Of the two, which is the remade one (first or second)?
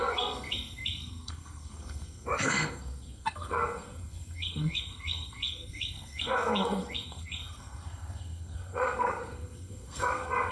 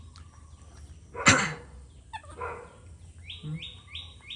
first